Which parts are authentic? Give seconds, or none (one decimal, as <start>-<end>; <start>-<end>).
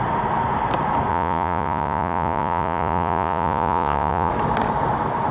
0.0-1.1; 4.3-5.3